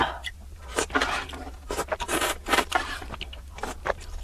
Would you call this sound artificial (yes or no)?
no